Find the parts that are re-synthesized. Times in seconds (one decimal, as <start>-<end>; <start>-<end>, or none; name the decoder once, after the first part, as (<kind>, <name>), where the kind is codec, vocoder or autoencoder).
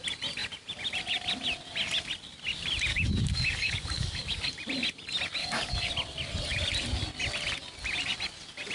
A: 2.9-4.5 (codec, DAC); 5.4-5.9